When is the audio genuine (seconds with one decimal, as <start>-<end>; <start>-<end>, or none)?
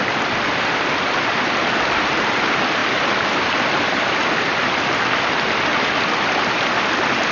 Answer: 0.0-7.3